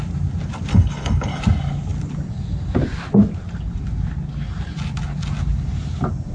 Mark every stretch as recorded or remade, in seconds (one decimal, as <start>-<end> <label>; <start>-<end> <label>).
0.0-0.7 recorded; 0.7-1.4 remade; 1.4-6.3 recorded